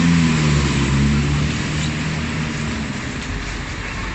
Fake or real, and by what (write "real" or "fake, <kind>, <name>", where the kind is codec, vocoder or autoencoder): real